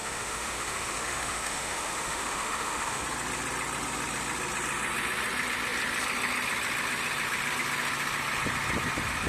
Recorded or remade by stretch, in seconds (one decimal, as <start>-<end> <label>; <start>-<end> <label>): 0.0-3.0 remade; 3.0-9.3 recorded

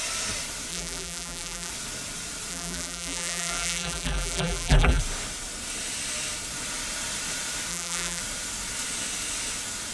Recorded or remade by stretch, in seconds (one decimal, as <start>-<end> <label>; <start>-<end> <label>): 0.0-0.7 recorded; 0.7-1.7 remade; 1.7-2.5 recorded; 2.5-5.0 remade; 5.0-7.7 recorded; 7.7-8.2 remade; 8.2-9.9 recorded

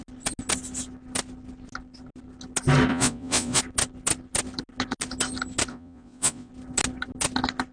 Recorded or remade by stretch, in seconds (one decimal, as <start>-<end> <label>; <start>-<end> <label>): 0.0-2.9 recorded; 2.9-3.6 remade; 3.6-5.7 recorded; 5.7-6.5 remade; 6.5-7.7 recorded

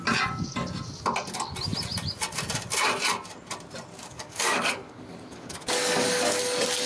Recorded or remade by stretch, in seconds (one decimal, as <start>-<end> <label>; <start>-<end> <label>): 0.0-3.9 recorded; 3.9-6.4 remade; 6.4-6.9 recorded

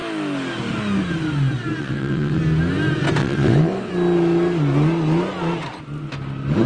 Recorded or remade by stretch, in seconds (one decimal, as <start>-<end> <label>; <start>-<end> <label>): 0.0-1.8 recorded; 1.8-2.4 remade; 2.4-3.2 recorded; 3.2-3.9 remade; 3.9-6.7 recorded